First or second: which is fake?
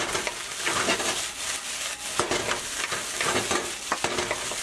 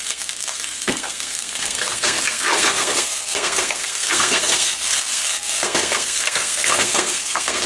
second